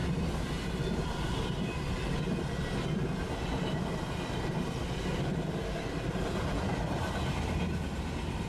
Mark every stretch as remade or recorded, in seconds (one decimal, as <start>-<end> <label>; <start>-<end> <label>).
0.0-8.5 recorded